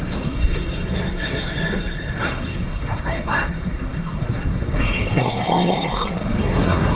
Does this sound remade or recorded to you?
remade